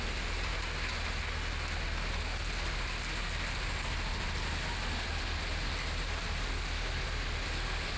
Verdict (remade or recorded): recorded